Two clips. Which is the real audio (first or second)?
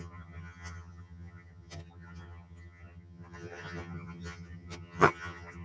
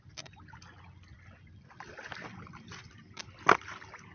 second